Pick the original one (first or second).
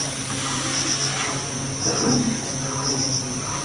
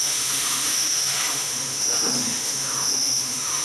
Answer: first